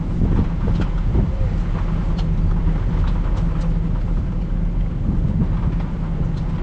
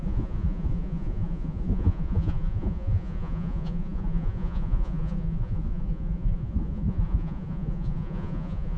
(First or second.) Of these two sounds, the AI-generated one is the second